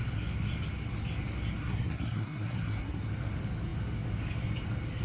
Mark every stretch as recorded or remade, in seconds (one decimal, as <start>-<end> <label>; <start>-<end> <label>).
0.0-1.6 recorded; 1.6-3.1 remade; 3.1-5.0 recorded